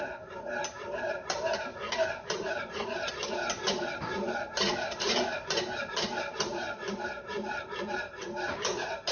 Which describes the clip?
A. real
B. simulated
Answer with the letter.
B